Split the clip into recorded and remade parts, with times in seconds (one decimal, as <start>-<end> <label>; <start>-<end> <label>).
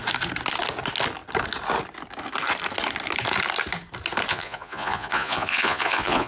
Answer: 0.0-4.3 recorded; 4.3-6.3 remade